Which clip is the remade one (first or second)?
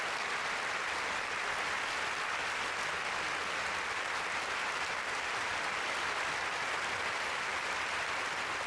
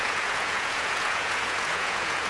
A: second